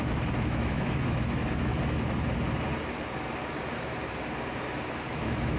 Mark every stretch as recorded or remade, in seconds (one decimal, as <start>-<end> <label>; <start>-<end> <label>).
0.0-1.7 remade; 1.7-4.9 recorded; 4.9-5.6 remade